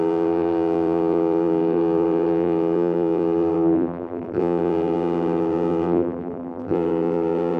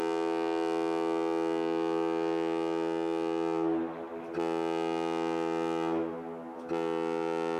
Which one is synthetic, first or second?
first